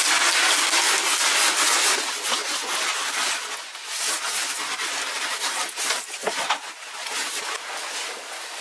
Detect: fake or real real